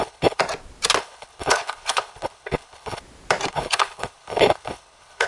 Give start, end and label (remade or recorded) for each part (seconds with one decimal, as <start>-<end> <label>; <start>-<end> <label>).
0.0-0.4 remade; 0.4-1.0 recorded; 1.0-3.0 remade; 3.0-3.5 recorded; 3.5-5.3 remade